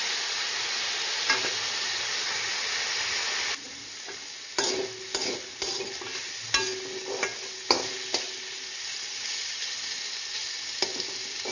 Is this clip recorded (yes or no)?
yes